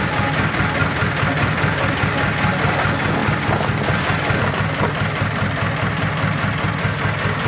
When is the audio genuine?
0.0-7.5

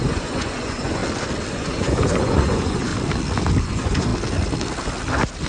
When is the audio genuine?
1.0-1.5; 2.9-3.6; 4.1-5.5

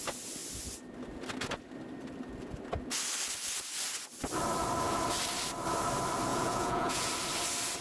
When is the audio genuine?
0.0-6.3; 7.1-7.8

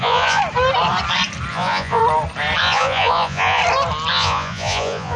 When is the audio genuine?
0.4-1.5; 2.0-2.6; 3.6-4.1

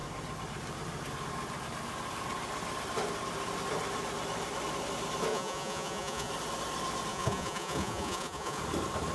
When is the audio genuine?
0.0-5.3; 6.3-7.1; 8.6-9.1

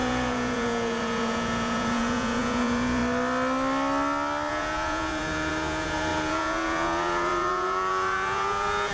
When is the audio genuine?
3.0-4.5